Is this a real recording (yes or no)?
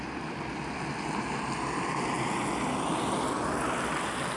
yes